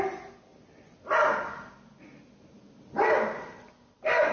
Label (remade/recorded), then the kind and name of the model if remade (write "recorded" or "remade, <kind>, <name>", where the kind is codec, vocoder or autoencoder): recorded